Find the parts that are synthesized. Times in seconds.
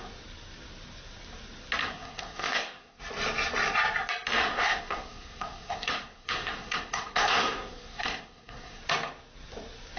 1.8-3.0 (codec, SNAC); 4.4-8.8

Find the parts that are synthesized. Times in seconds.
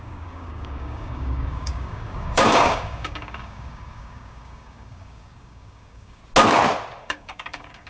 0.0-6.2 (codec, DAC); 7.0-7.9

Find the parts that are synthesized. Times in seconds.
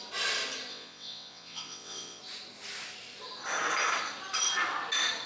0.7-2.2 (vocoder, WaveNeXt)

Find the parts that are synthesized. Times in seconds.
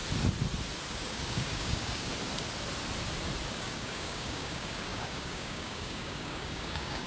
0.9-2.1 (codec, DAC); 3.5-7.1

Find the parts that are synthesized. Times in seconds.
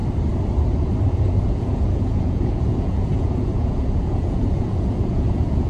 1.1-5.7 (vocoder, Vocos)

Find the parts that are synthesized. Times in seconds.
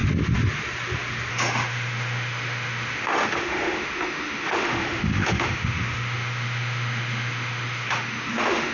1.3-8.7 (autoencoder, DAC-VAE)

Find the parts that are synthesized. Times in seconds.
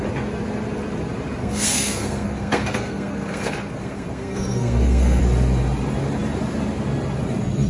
1.4-5.2 (codec, SNAC)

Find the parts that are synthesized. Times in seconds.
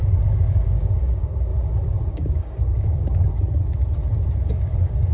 0.0-1.5 (codec, DAC); 2.1-3.3; 4.5-5.1